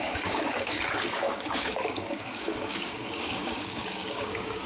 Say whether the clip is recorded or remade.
remade